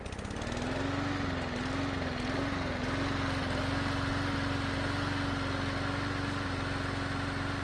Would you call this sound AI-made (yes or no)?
no